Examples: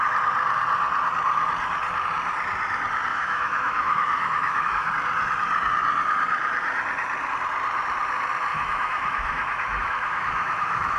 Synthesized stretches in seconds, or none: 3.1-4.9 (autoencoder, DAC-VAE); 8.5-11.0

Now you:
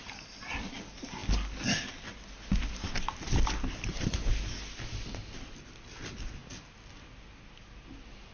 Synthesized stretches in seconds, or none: none